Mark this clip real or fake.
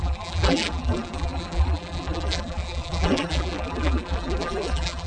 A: fake